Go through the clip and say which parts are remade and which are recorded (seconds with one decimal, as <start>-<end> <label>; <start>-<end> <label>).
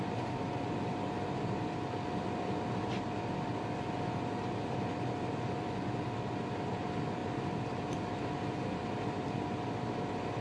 0.0-10.4 recorded